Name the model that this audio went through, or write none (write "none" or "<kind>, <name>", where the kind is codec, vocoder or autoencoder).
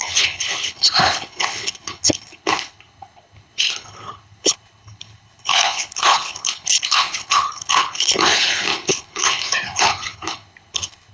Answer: codec, HILCodec